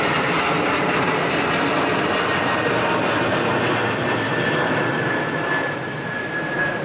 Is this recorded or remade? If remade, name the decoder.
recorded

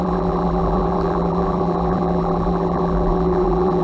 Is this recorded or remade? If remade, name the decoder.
remade, vocoder, BigVGAN v2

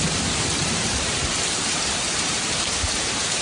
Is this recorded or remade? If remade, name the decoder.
remade, vocoder, BigVGAN v2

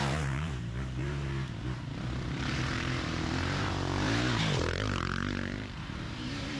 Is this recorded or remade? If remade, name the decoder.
remade, vocoder, BigVGAN v2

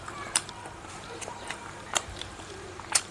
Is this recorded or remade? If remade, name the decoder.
remade, vocoder, BigVGAN v2